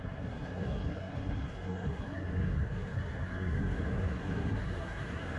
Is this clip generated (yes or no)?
yes